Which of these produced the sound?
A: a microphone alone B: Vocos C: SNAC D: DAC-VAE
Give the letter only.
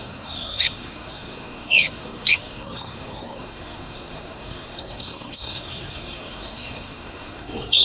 C